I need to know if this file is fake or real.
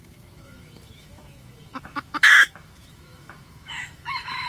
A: fake